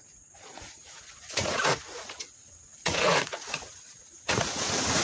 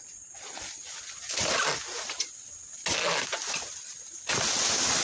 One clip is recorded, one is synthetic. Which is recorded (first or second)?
second